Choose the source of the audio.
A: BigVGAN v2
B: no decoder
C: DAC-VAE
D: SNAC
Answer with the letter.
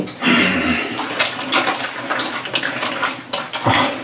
B